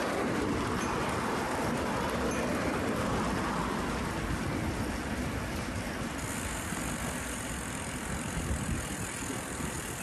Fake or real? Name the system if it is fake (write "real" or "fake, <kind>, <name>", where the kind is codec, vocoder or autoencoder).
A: real